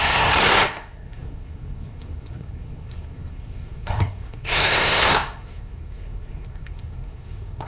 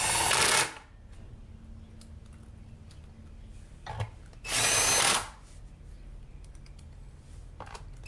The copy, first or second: first